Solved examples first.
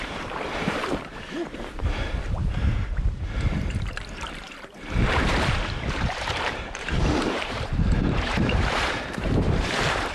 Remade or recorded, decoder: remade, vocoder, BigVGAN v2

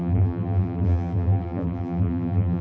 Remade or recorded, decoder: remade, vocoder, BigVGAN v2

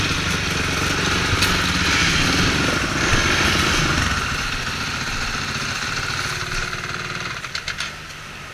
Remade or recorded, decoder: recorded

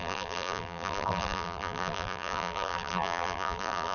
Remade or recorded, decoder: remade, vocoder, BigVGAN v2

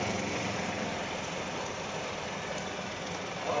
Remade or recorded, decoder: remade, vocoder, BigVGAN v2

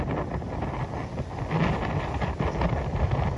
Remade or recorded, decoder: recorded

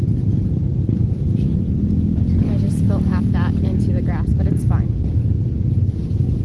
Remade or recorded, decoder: remade, vocoder, BigVGAN v2